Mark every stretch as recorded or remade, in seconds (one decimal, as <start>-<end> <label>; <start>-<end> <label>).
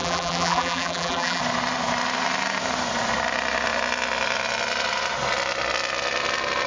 0.0-1.4 remade; 1.4-6.7 recorded